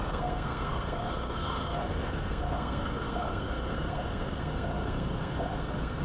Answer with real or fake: fake